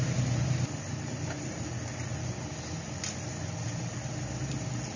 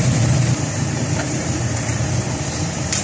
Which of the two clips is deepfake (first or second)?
second